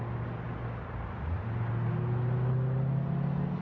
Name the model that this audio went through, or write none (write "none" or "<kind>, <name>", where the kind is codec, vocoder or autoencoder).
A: none